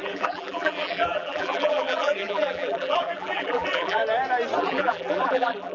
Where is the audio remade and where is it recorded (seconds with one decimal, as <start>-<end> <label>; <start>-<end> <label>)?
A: 0.0-4.0 remade; 4.0-4.6 recorded; 4.6-5.7 remade